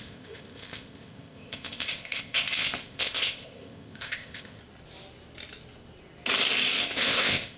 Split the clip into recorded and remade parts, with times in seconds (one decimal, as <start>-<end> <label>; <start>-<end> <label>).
0.0-4.6 remade; 4.6-6.8 recorded; 6.8-7.6 remade